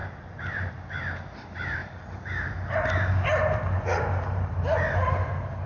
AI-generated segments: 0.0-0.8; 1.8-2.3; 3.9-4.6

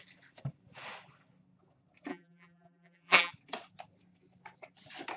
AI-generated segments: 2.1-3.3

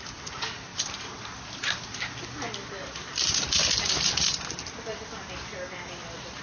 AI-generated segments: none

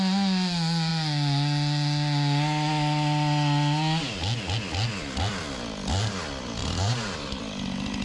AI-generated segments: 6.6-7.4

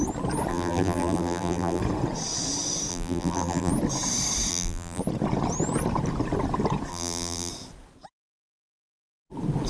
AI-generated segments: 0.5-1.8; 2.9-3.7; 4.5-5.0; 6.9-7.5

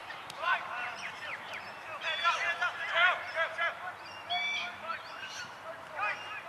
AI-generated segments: 0.0-3.9; 4.7-5.4

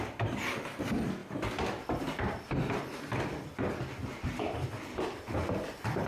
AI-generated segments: 1.2-2.7